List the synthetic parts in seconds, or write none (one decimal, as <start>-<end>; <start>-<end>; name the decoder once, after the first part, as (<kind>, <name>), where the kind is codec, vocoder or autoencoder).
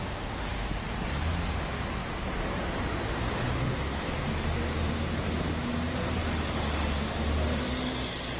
none